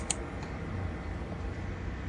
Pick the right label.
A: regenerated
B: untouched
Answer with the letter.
B